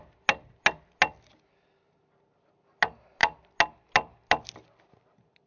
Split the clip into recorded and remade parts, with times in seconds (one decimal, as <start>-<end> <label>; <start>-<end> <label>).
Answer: 0.0-5.5 recorded